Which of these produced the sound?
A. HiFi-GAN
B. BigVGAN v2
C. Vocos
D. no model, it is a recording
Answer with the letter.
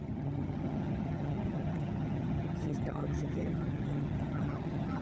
A